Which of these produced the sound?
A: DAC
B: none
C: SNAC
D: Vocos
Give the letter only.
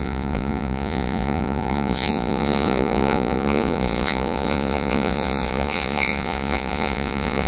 D